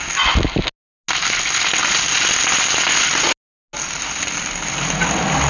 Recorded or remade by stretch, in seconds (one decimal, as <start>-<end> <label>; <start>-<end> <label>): 0.0-5.5 recorded